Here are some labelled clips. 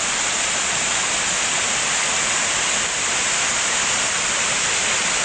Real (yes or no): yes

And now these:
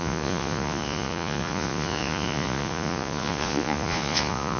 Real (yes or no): no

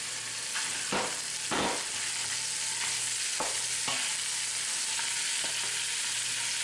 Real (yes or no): yes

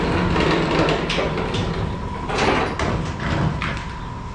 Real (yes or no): yes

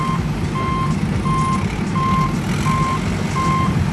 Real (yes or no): yes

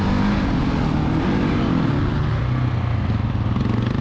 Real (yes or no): yes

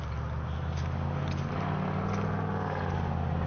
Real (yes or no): yes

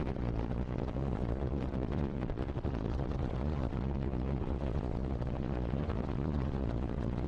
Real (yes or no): no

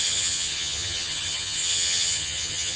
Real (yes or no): no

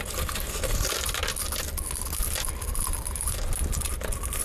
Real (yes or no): yes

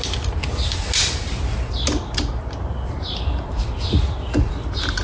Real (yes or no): yes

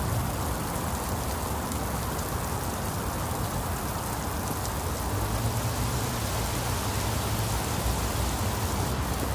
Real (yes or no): yes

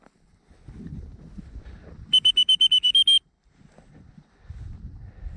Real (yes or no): yes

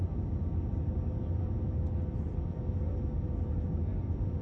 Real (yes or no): yes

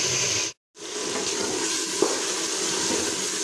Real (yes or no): yes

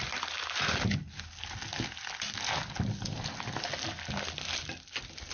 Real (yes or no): yes